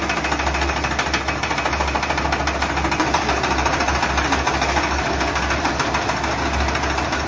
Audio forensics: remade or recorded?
recorded